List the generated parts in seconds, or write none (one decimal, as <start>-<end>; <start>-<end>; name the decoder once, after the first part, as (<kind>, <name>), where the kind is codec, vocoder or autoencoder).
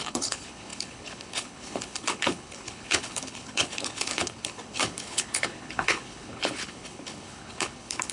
0.0-8.1 (codec, HILCodec)